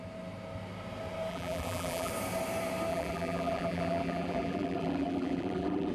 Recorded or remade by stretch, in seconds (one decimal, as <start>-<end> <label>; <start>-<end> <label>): 0.0-1.3 recorded; 1.3-2.1 remade; 2.1-2.9 recorded; 2.9-5.9 remade